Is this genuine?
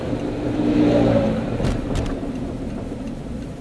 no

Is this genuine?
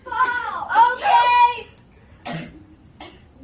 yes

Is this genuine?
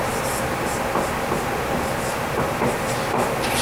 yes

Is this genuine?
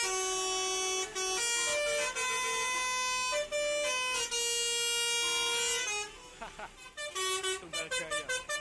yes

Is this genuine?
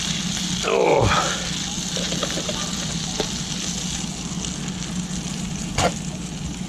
yes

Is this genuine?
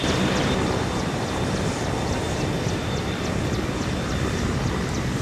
yes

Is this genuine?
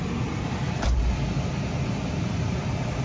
yes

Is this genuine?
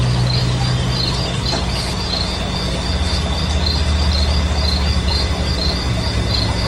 yes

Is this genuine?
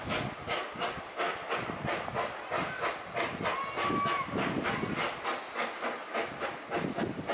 yes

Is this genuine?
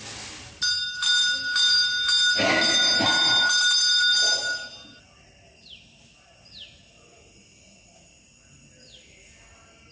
yes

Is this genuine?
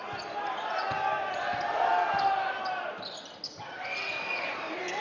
yes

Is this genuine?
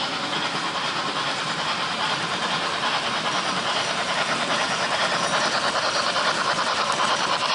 no